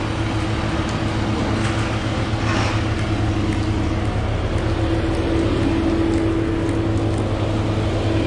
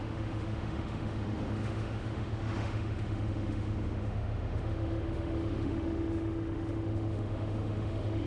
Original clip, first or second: first